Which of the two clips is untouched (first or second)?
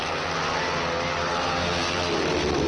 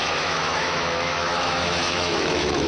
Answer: first